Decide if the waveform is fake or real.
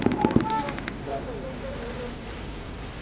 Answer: fake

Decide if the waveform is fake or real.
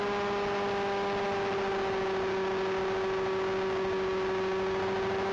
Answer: real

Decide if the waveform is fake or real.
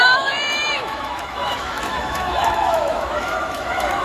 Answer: fake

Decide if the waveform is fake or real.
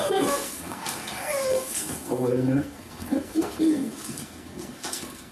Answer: fake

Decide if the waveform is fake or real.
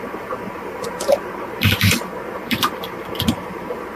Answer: fake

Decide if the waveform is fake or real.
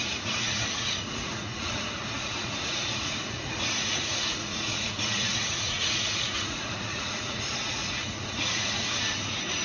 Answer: fake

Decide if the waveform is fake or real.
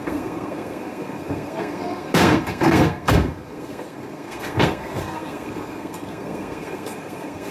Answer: fake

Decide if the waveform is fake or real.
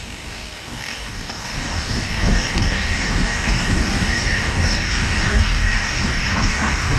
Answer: fake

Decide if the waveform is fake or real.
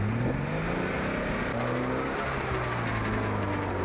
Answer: real